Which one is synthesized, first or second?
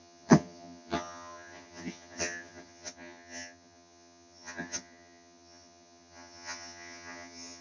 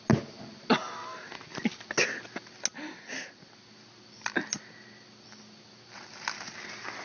first